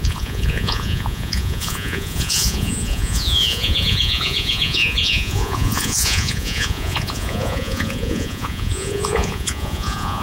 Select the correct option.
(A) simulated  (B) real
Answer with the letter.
A